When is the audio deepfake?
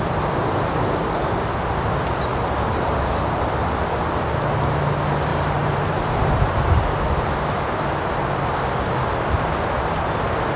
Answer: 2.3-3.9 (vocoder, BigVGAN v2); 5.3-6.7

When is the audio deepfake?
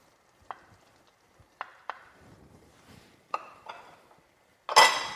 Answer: 1.7-3.7 (vocoder, BigVGAN v2)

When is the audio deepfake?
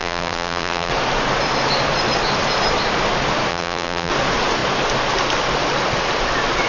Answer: 0.0-0.9 (vocoder, BigVGAN v2); 3.5-4.1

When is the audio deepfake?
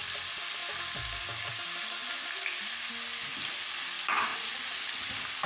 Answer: none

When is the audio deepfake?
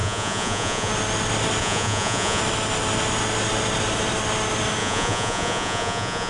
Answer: 0.0-0.9 (vocoder, Vocos); 1.6-2.4; 4.8-6.3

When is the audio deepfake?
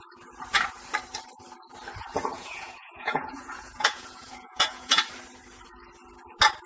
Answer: 2.3-5.0 (vocoder, Vocos)